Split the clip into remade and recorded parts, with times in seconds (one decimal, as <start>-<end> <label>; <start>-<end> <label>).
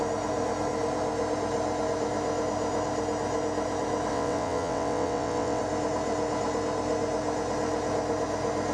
0.0-4.1 recorded; 4.1-5.6 remade; 5.6-8.7 recorded